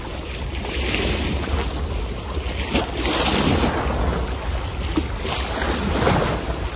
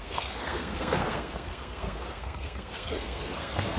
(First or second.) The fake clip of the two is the second